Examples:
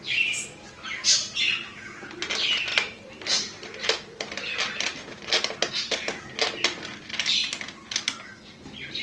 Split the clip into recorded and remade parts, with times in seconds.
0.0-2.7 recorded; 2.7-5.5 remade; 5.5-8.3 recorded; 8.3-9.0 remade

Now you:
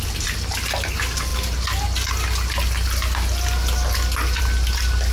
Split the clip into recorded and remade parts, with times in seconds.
0.0-5.1 recorded

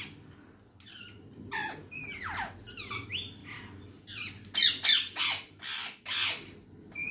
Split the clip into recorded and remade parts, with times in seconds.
0.0-7.1 recorded